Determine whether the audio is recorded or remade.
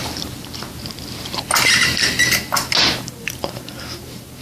recorded